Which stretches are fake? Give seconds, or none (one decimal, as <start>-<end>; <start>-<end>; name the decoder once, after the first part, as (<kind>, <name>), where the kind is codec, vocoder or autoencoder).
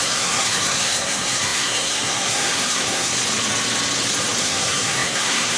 0.0-3.1 (codec, SNAC); 4.4-5.6